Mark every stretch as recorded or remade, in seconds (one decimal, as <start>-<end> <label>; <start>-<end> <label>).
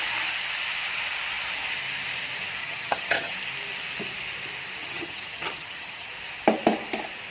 0.0-2.6 recorded; 2.6-3.3 remade; 3.3-4.8 recorded; 4.8-6.1 remade; 6.1-7.3 recorded